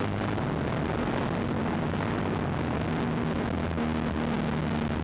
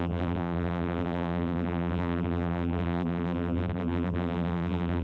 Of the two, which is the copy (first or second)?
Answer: second